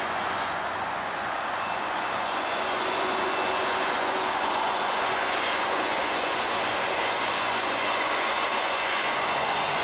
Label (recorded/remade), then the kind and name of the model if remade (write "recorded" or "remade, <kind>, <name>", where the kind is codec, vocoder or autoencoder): remade, vocoder, Vocos